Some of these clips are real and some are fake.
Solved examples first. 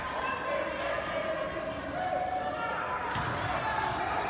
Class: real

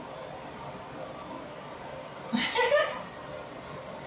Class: real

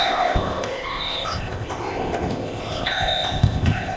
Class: fake